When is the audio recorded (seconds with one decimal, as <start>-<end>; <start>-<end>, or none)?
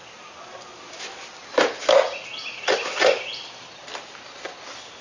0.0-5.0